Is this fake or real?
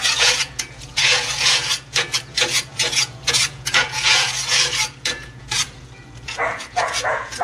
fake